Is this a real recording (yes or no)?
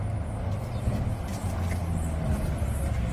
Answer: yes